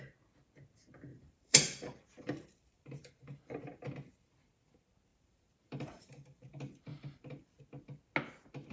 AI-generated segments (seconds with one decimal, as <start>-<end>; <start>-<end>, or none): 1.1-3.4; 5.1-6.5; 6.9-7.6